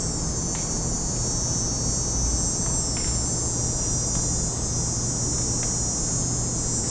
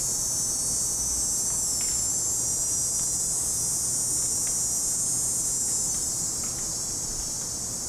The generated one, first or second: second